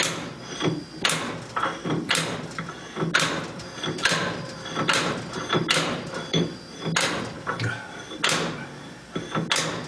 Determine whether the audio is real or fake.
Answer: real